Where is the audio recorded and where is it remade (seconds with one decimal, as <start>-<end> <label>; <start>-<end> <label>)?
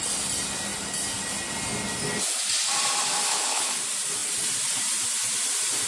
0.0-3.3 recorded; 3.3-3.8 remade; 3.8-5.9 recorded